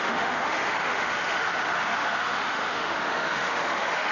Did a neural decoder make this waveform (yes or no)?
yes